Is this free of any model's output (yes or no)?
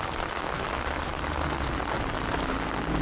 yes